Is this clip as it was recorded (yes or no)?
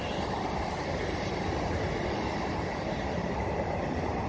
no